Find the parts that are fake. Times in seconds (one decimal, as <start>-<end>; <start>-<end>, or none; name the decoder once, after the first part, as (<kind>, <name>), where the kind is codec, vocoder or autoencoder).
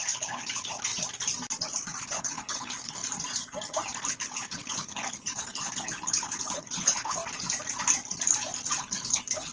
0.0-0.9 (codec, HILCodec); 2.0-3.0; 4.1-7.2; 8.8-9.5